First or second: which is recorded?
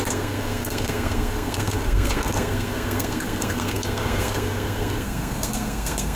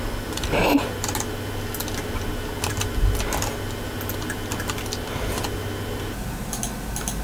second